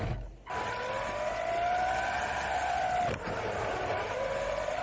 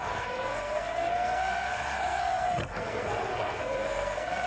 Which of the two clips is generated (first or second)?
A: second